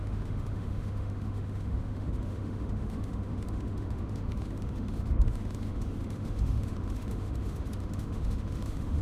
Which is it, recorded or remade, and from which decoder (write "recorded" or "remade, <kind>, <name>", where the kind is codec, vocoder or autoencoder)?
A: remade, autoencoder, DAC-VAE